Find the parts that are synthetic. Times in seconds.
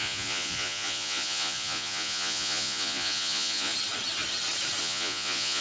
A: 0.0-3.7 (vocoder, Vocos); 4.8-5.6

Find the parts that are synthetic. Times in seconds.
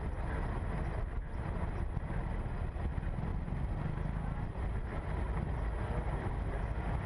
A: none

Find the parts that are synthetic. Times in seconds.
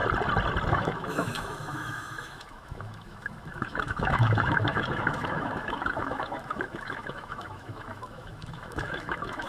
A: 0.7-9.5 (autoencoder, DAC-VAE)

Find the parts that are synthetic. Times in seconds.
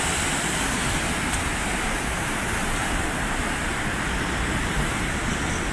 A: 2.8-3.8 (vocoder, BigVGAN v2)